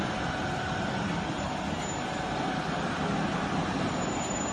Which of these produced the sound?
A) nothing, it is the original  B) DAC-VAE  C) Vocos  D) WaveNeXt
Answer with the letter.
A